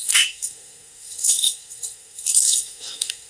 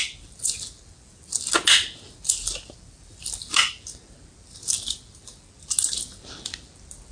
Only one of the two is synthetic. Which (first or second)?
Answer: first